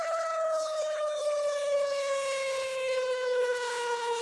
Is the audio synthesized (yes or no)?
yes